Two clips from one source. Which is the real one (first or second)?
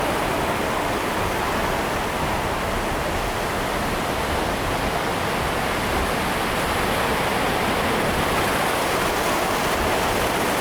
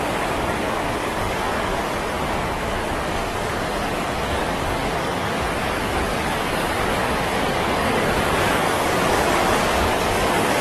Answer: first